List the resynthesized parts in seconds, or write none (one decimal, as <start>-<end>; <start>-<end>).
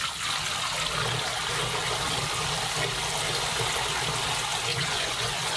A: 4.7-5.6